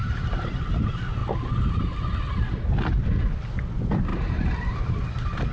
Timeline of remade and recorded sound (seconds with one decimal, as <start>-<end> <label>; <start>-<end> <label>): 0.0-0.6 remade; 0.6-4.1 recorded; 4.1-5.0 remade; 5.0-5.5 recorded